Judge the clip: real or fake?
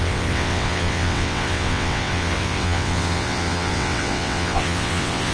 fake